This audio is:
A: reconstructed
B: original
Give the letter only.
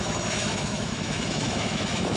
A